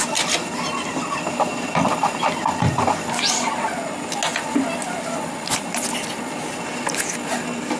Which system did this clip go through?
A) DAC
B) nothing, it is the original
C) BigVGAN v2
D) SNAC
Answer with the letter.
B